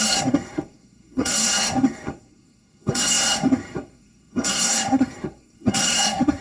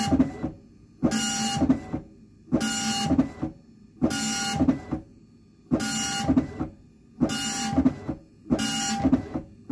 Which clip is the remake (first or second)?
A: first